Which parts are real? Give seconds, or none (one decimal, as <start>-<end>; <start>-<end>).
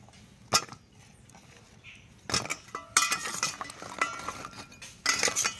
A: 0.0-5.6